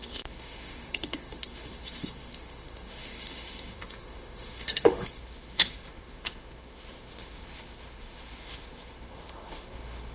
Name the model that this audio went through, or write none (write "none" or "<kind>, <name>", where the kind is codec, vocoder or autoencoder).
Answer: autoencoder, DAC-VAE